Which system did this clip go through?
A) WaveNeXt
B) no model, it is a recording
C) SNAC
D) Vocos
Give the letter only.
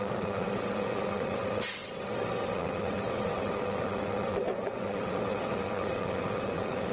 A